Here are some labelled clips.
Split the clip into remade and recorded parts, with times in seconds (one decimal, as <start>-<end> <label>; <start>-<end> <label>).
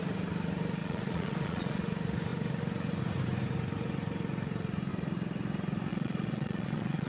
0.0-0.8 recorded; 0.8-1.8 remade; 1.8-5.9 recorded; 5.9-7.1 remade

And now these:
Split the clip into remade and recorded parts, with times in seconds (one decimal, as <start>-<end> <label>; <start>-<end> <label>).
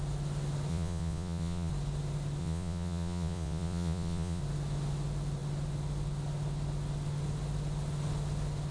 0.0-0.7 recorded; 0.7-1.7 remade; 1.7-2.4 recorded; 2.4-4.4 remade; 4.4-8.7 recorded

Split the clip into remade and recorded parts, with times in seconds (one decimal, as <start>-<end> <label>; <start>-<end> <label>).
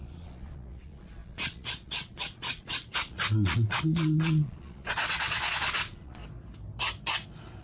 0.0-6.2 remade; 6.2-7.6 recorded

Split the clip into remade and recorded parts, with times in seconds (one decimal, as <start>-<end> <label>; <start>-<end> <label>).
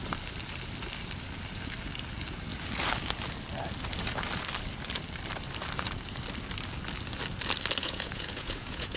0.0-7.8 recorded; 7.8-9.0 remade